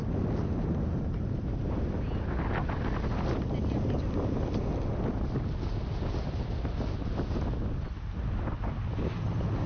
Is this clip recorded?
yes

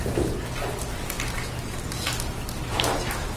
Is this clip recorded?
yes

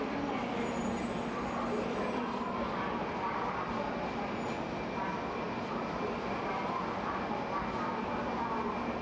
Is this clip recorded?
yes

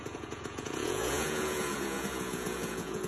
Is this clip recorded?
no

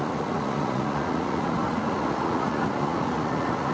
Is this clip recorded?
no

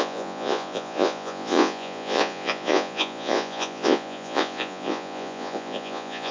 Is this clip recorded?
no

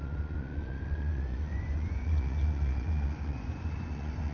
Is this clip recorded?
no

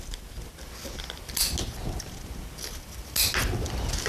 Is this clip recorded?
yes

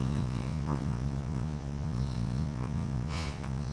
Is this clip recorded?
no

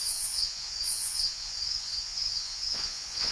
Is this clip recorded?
no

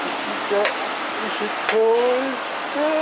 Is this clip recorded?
yes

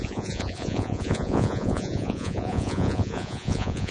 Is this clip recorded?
no